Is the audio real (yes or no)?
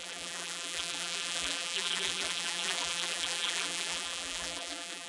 no